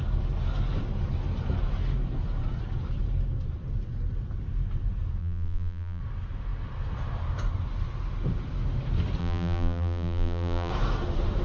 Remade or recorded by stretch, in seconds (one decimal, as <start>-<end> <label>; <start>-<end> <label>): 0.0-5.2 recorded; 5.2-6.0 remade; 6.0-9.2 recorded; 9.2-10.7 remade; 10.7-11.4 recorded